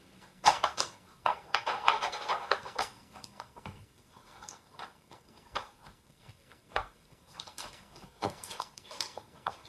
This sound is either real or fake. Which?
fake